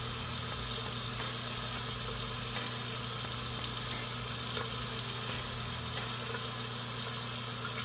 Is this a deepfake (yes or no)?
no